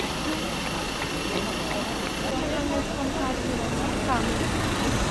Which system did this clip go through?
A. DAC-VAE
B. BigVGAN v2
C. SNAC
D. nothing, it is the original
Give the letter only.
D